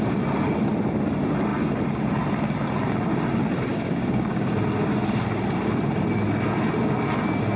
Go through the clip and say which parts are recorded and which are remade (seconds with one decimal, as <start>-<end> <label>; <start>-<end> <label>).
0.0-3.7 recorded; 3.7-4.5 remade; 4.5-7.6 recorded